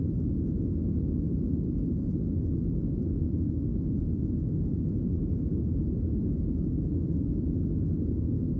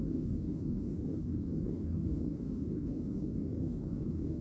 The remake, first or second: second